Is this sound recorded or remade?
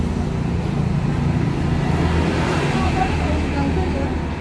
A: recorded